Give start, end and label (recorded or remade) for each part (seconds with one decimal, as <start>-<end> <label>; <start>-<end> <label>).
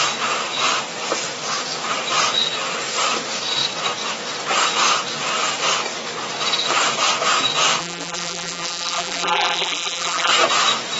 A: 0.0-7.8 recorded; 7.8-10.3 remade; 10.3-11.0 recorded